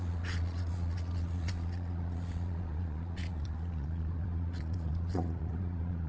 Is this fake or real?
fake